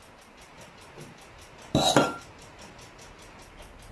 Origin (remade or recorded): recorded